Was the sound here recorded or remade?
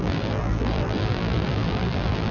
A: remade